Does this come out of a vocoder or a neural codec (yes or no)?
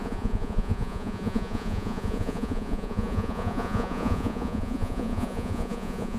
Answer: yes